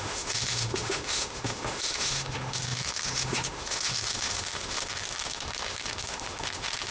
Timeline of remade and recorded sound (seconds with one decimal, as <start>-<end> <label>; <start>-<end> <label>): 0.0-6.9 remade